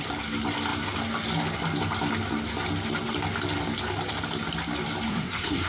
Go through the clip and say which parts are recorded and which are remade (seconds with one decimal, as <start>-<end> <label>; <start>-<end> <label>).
0.0-5.1 recorded; 5.1-5.7 remade